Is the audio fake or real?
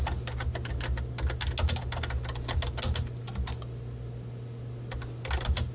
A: real